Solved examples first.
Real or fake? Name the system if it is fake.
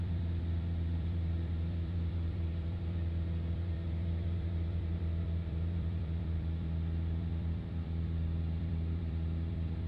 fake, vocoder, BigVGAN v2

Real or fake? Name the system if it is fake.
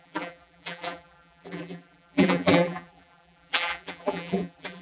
fake, vocoder, BigVGAN v2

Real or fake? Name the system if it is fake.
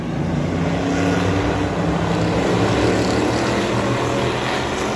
real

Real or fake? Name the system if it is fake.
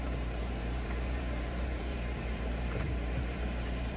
fake, vocoder, BigVGAN v2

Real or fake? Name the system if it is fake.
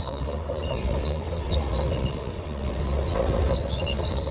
fake, vocoder, WaveNeXt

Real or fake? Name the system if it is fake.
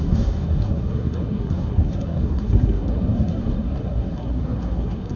fake, codec, SNAC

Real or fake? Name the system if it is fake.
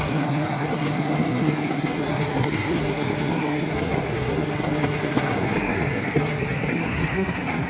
fake, codec, SNAC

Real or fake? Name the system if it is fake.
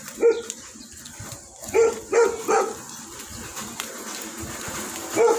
real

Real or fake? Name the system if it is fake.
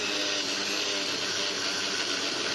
real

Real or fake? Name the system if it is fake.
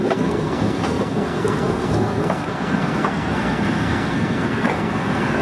fake, codec, SNAC